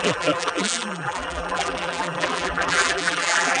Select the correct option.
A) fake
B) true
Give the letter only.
A